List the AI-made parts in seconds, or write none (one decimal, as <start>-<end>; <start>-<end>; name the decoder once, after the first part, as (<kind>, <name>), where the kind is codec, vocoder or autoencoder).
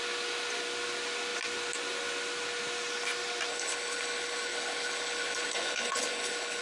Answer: 3.5-6.6 (codec, HILCodec)